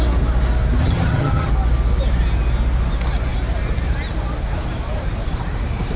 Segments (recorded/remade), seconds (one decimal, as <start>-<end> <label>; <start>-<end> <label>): 0.0-0.8 recorded; 0.8-1.5 remade; 1.5-6.0 recorded